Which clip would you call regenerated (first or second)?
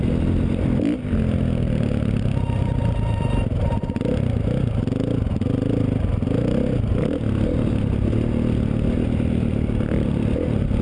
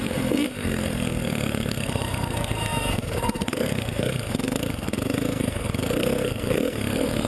second